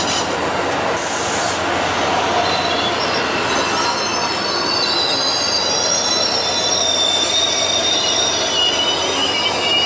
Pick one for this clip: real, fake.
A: real